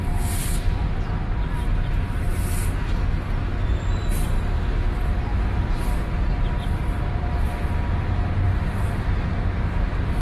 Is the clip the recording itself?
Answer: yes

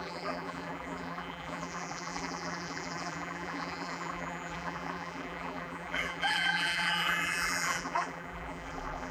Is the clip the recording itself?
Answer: no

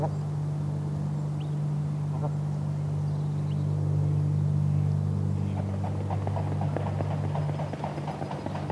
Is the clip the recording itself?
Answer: yes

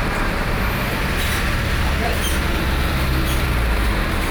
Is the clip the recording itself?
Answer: no